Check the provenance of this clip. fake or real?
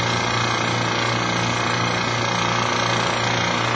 real